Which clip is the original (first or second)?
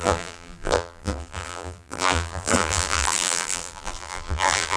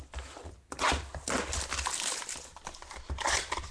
second